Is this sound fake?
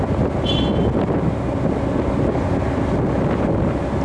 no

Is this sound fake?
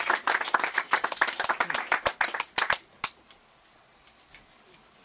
no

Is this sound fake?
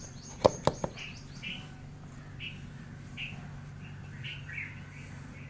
no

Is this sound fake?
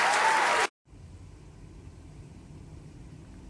no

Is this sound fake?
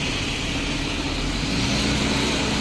no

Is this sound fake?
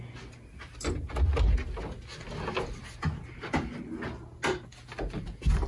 no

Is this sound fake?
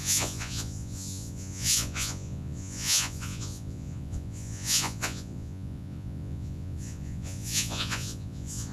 yes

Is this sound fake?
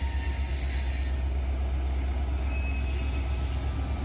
no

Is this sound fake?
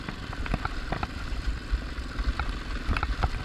no